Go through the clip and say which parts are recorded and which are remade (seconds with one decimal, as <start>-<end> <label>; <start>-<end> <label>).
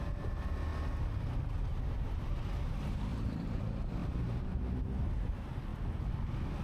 0.0-3.1 recorded; 3.1-3.6 remade; 3.6-4.0 recorded; 4.0-4.6 remade; 4.6-6.6 recorded